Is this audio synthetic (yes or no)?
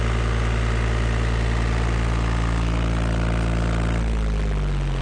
no